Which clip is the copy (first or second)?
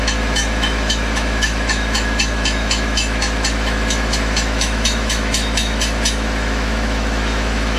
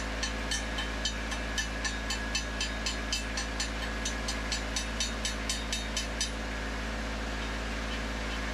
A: first